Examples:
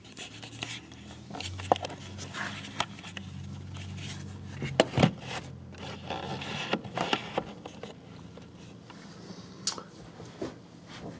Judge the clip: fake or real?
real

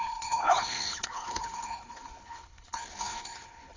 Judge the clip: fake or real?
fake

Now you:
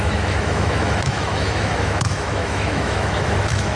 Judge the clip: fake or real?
fake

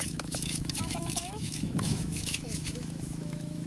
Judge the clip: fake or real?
fake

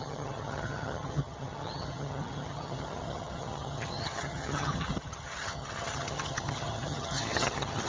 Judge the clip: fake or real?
fake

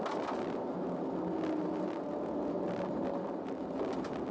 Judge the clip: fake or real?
real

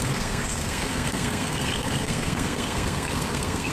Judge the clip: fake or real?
fake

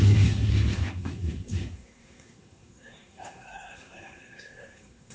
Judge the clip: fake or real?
fake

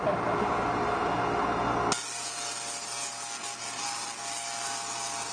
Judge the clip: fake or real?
real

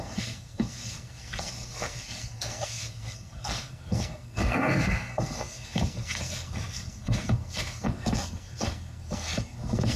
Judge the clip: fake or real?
fake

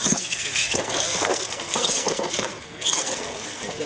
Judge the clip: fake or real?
fake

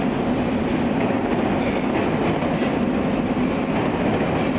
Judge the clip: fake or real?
real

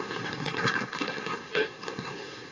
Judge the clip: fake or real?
fake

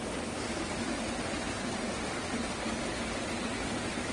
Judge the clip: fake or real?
real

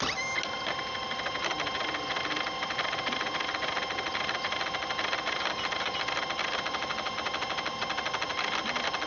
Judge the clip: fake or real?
real